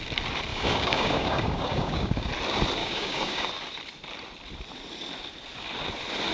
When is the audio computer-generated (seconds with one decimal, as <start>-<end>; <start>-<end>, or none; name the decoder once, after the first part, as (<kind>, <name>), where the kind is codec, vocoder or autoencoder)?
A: 0.5-2.3 (codec, DAC); 2.8-3.5